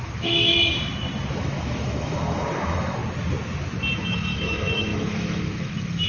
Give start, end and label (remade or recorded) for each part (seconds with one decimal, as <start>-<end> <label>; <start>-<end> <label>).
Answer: 0.0-0.5 remade; 0.5-1.3 recorded; 1.3-3.0 remade; 3.0-4.1 recorded; 4.1-6.1 remade